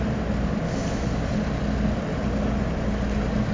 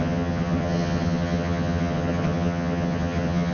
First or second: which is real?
first